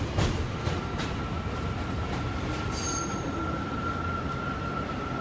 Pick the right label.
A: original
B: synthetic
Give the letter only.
B